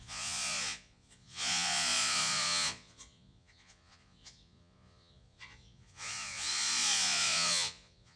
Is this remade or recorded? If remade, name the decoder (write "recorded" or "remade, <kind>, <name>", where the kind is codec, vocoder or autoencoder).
remade, vocoder, Vocos